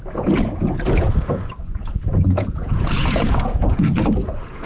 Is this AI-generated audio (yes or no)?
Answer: yes